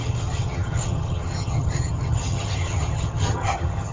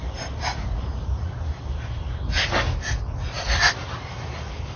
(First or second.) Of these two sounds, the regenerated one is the first